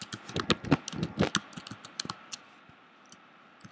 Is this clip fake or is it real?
real